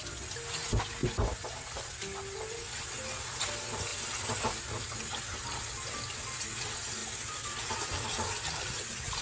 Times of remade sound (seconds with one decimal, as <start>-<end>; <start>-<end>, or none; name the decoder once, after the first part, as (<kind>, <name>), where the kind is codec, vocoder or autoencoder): none